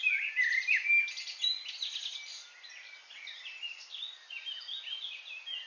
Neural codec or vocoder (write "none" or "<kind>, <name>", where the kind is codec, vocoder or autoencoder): none